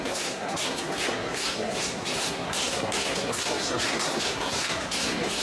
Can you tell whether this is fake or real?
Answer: fake